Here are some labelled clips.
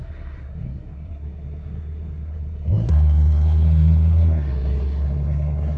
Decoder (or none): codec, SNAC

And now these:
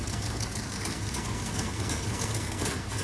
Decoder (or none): codec, SNAC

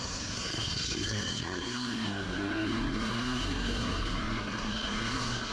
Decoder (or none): codec, SNAC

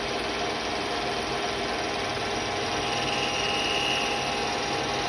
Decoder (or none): none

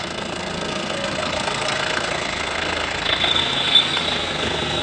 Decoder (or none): codec, SNAC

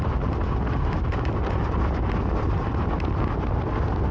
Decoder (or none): none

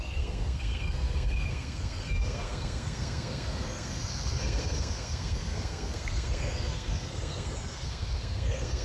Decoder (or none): codec, SNAC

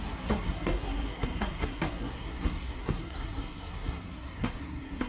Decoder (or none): codec, SNAC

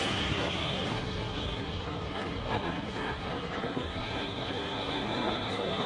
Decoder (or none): codec, SNAC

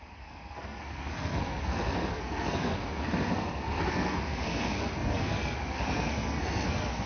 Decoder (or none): codec, SNAC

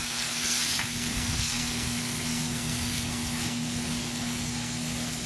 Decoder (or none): codec, SNAC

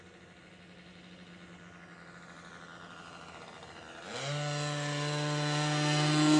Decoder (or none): none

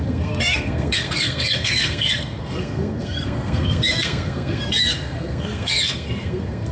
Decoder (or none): codec, SNAC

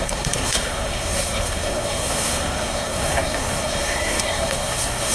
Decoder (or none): codec, SNAC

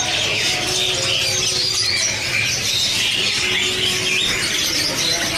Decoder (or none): none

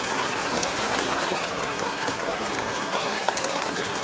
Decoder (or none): codec, SNAC